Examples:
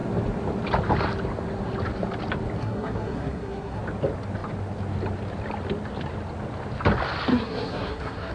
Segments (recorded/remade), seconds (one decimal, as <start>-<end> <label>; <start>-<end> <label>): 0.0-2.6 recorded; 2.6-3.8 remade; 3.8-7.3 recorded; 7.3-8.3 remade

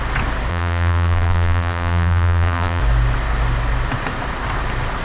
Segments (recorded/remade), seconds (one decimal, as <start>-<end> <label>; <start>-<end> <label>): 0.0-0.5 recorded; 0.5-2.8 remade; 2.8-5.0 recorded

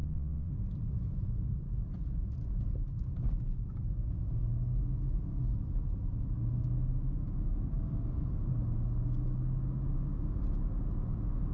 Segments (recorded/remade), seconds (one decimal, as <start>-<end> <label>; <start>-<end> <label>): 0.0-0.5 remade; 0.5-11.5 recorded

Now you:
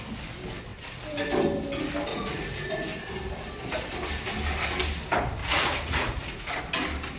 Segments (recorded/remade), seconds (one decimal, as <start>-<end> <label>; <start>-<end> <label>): 0.0-2.1 recorded; 2.1-2.7 remade; 2.7-5.4 recorded; 5.4-6.6 remade; 6.6-7.2 recorded